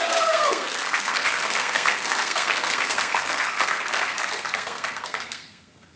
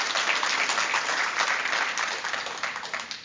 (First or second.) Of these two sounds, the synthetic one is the first